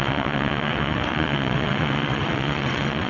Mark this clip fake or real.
fake